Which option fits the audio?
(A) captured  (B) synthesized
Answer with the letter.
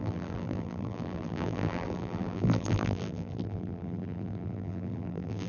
B